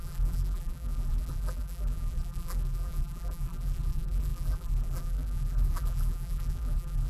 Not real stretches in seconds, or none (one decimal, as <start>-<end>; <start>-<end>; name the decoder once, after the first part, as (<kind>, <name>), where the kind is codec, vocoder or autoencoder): 0.0-7.1 (vocoder, BigVGAN v2)